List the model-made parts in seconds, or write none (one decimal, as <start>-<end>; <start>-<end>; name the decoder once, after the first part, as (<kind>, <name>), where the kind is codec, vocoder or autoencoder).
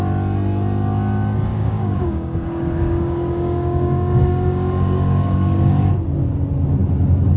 1.5-5.9 (codec, DAC)